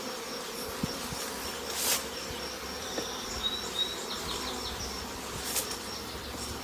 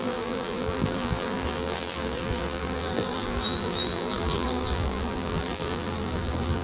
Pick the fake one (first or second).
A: second